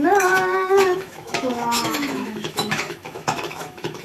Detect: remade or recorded remade